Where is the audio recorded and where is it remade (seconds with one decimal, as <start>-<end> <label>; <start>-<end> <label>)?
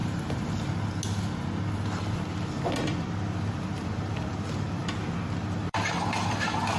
0.0-2.8 recorded; 2.8-4.8 remade; 4.8-5.4 recorded; 5.4-6.8 remade